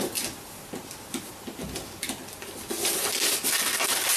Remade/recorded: recorded